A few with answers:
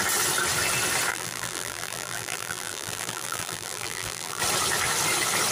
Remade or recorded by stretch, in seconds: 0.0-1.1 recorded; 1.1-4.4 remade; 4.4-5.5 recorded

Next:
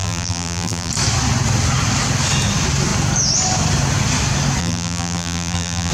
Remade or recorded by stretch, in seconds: 0.0-0.9 remade; 0.9-4.6 recorded; 4.6-5.9 remade